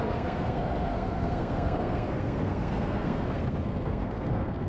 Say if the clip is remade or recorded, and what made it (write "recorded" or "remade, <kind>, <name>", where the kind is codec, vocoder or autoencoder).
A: remade, codec, SNAC